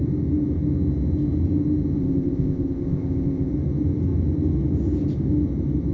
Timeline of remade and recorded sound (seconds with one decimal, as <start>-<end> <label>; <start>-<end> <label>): 0.0-2.0 recorded; 2.0-3.5 remade; 3.5-5.9 recorded